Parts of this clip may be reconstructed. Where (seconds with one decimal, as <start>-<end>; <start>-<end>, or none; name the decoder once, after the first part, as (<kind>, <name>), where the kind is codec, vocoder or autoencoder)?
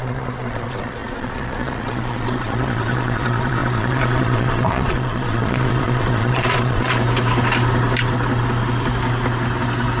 0.0-7.0 (vocoder, Vocos)